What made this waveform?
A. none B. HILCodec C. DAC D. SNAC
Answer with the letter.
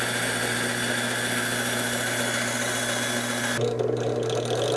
A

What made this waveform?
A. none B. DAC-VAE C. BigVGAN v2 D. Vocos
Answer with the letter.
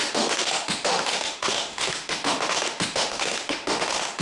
B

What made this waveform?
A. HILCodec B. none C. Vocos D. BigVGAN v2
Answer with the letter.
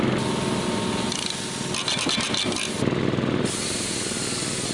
B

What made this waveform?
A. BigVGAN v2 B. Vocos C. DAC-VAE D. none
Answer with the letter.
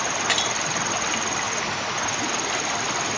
D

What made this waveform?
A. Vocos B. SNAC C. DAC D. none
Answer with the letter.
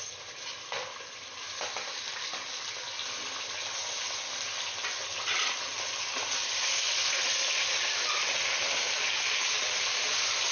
D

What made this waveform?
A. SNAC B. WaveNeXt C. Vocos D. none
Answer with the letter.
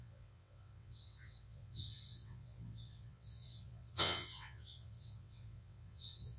B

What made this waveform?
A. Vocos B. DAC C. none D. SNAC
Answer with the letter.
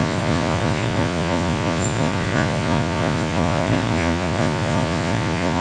A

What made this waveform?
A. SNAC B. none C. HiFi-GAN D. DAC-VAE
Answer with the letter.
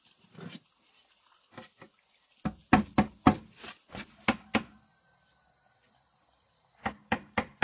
B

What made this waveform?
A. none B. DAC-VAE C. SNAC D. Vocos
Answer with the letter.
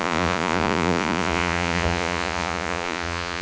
D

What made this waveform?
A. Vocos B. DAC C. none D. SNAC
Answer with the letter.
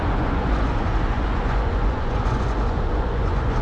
A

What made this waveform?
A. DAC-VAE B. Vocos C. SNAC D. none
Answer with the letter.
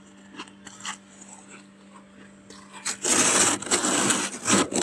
D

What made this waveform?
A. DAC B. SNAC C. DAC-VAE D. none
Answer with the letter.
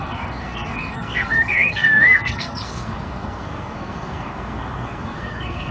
B